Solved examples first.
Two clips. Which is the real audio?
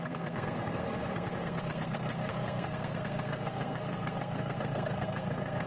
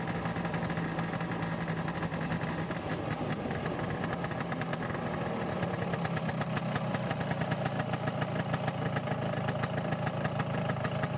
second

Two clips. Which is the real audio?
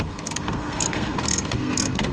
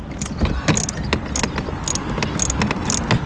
second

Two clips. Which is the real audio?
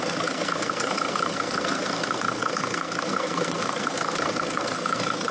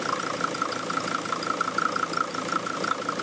second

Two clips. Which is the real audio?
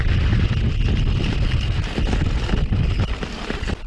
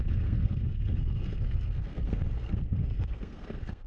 first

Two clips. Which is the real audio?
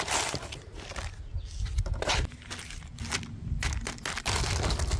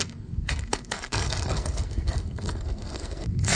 first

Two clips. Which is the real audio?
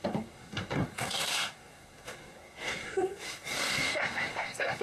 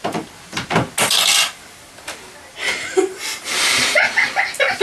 second